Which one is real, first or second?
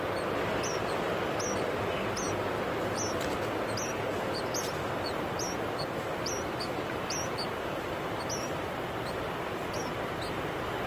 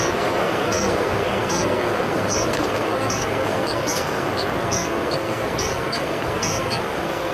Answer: first